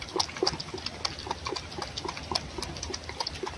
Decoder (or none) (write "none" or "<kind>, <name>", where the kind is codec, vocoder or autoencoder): none